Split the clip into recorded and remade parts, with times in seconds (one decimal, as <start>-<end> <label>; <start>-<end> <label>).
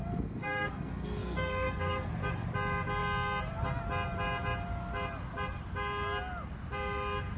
0.0-2.1 remade; 2.1-7.4 recorded